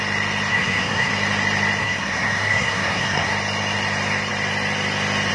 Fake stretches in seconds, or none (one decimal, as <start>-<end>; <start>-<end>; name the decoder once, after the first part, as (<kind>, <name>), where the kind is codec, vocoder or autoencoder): 0.5-1.1 (codec, SNAC); 1.8-3.3